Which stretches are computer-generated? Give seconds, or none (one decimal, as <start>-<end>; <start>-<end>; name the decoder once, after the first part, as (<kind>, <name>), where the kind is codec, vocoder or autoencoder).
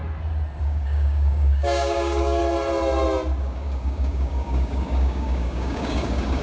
0.6-2.4 (codec, DAC); 3.4-6.4